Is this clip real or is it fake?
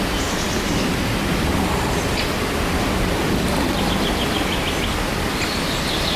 real